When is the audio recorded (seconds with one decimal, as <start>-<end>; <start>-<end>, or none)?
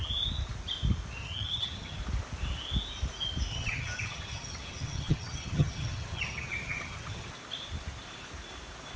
0.0-1.2; 2.0-3.5; 7.3-9.0